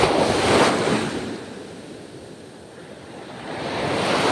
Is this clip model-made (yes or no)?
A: yes